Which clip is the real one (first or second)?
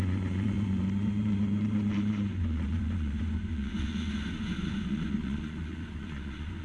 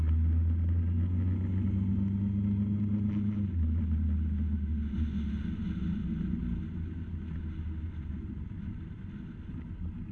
second